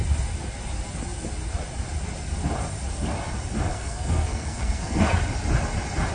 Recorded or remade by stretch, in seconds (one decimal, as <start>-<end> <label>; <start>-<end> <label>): 0.0-3.7 recorded; 3.7-5.2 remade; 5.2-6.1 recorded